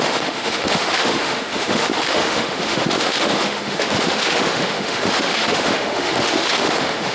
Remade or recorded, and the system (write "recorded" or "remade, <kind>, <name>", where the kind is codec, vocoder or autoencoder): remade, autoencoder, DAC-VAE